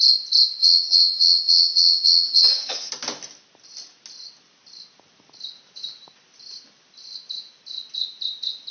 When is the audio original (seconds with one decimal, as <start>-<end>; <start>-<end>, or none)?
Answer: 0.0-0.6; 2.9-8.7

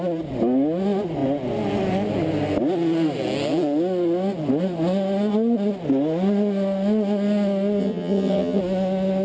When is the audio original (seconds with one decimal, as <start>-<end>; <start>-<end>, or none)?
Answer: 0.0-7.8; 8.6-9.2

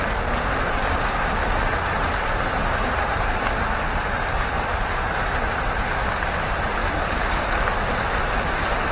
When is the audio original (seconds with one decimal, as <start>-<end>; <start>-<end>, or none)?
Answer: 0.0-8.9

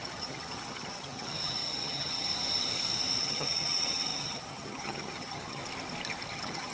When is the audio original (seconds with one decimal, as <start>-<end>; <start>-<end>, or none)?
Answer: 2.3-3.2; 5.6-6.3

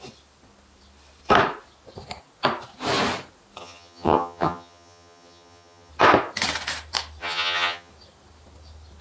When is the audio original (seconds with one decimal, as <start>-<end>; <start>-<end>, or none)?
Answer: 0.0-3.6; 5.9-7.2; 7.9-9.0